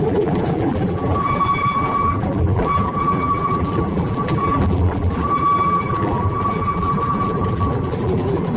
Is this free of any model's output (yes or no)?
no